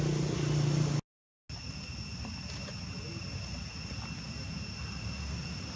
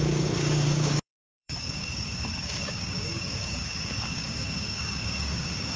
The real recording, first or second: first